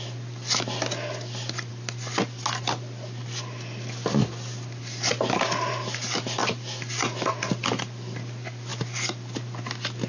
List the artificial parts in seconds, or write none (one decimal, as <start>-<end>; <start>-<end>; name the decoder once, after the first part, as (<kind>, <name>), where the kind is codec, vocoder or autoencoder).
none